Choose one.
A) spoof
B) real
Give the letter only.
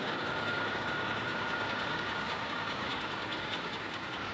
A